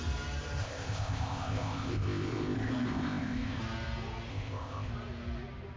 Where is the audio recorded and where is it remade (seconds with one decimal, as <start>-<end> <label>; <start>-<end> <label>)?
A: 0.0-0.6 recorded; 0.6-3.6 remade; 3.6-4.3 recorded; 4.3-4.9 remade; 4.9-5.8 recorded

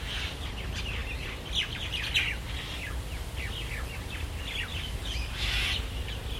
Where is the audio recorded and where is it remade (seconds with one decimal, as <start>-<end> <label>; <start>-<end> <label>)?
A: 0.0-4.7 recorded; 4.7-5.7 remade; 5.7-6.4 recorded

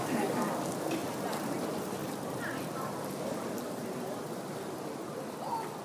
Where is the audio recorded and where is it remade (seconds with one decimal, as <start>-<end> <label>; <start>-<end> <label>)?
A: 0.0-1.0 remade; 1.0-1.6 recorded; 1.6-2.0 remade; 2.0-4.2 recorded; 4.2-5.8 remade